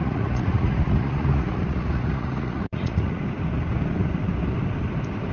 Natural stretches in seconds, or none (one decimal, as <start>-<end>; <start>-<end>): 3.2-5.3